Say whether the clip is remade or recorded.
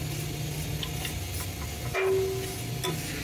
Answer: recorded